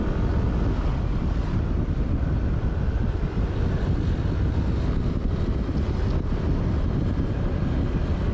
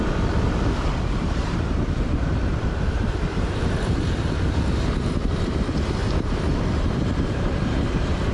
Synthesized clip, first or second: second